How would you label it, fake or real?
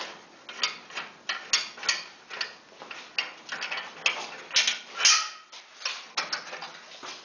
real